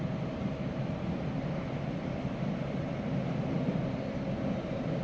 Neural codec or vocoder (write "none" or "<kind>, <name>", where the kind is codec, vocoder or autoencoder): none